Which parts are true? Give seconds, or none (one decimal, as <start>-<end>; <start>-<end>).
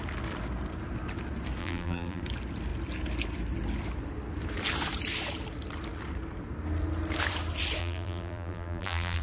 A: 0.0-1.6; 2.2-7.8